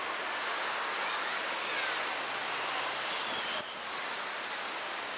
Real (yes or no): yes